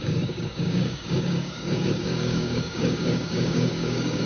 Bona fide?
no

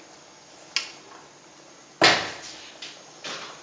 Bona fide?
yes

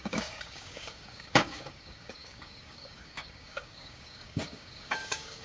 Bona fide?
no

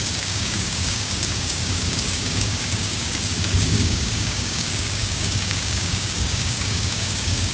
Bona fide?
no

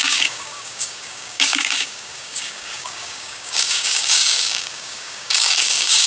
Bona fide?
no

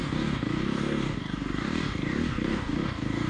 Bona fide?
no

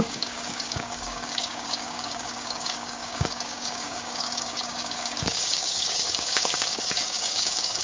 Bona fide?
no